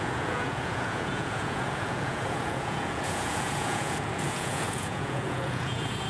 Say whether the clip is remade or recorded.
remade